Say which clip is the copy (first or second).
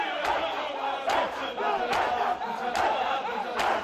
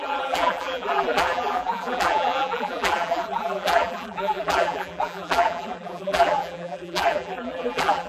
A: second